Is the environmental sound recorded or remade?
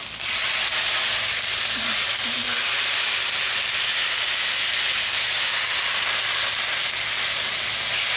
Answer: recorded